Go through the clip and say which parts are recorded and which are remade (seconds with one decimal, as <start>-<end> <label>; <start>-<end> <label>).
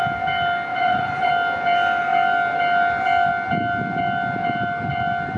0.0-0.7 recorded; 0.7-1.3 remade; 1.3-5.4 recorded